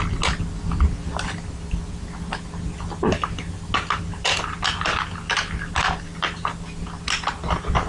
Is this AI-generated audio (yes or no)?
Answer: no